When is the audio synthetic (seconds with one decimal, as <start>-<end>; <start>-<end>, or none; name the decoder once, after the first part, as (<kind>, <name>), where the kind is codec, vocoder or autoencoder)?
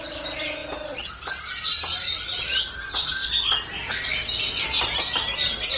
none